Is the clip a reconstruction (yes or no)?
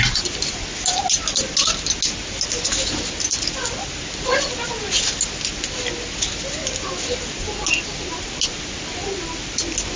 no